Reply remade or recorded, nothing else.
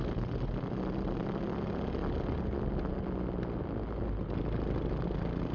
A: recorded